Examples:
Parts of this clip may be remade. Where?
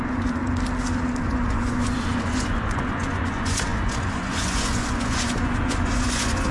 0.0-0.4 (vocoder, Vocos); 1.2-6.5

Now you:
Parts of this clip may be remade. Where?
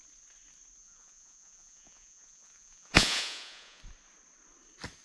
0.8-3.8 (vocoder, Vocos)